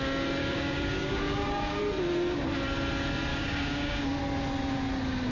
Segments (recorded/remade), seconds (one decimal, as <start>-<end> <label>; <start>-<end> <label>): 0.0-0.4 recorded; 0.4-1.8 remade; 1.8-3.3 recorded; 3.3-4.2 remade; 4.2-5.3 recorded